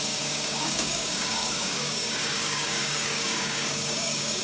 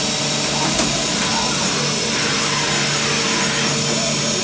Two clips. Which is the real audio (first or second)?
second